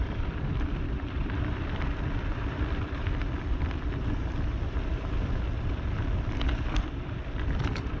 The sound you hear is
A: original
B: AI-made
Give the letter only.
B